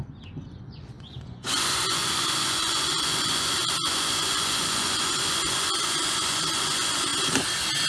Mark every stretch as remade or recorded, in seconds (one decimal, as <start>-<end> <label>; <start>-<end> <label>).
0.0-7.1 remade; 7.1-7.9 recorded